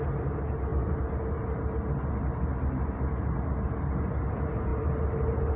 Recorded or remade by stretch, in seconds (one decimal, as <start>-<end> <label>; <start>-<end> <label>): 0.0-5.6 recorded